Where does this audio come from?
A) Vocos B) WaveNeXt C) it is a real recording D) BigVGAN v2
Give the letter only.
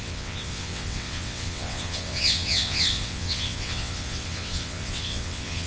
B